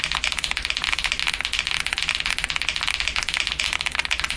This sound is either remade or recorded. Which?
recorded